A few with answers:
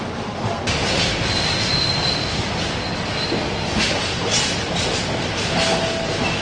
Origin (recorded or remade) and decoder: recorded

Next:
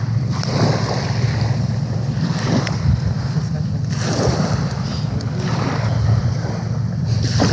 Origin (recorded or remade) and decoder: remade, vocoder, BigVGAN v2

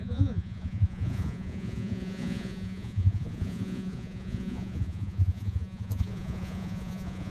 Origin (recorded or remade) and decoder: remade, vocoder, Vocos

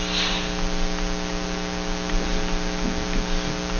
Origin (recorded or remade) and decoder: recorded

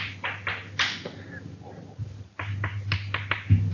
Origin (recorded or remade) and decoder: recorded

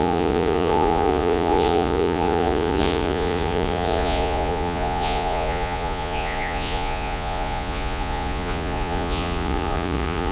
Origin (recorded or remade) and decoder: remade, vocoder, Vocos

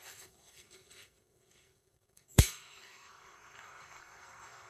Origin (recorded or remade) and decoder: remade, codec, SNAC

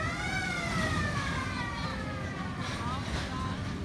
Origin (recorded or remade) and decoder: recorded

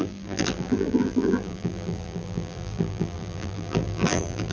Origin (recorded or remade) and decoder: remade, vocoder, BigVGAN v2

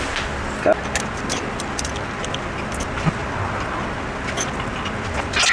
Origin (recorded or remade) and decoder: recorded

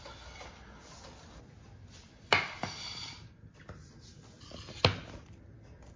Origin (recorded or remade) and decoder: recorded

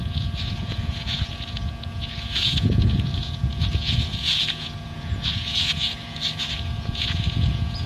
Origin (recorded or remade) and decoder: remade, vocoder, Vocos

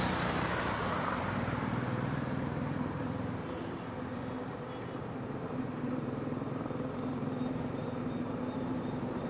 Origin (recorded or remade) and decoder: remade, vocoder, BigVGAN v2